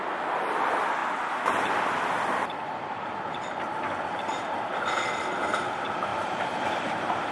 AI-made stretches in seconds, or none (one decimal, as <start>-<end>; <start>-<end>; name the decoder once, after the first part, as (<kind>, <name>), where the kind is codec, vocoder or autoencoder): 6.1-7.3 (vocoder, BigVGAN v2)